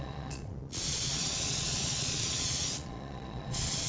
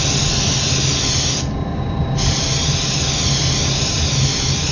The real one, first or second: second